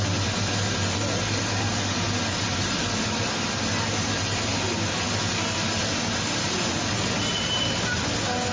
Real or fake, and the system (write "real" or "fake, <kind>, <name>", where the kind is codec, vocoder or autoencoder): real